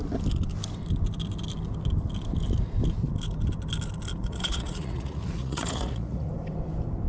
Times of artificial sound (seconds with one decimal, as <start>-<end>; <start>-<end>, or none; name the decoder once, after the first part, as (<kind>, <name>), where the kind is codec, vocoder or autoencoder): 4.2-6.3 (vocoder, Vocos)